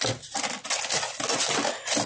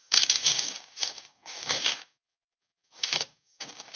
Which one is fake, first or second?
second